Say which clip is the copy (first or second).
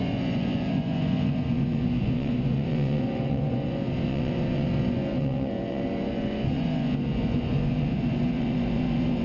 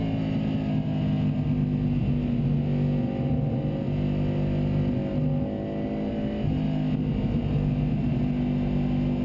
first